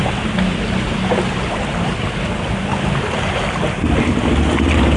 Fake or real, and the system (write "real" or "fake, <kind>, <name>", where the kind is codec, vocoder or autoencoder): real